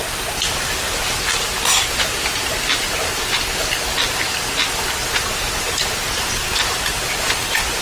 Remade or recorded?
recorded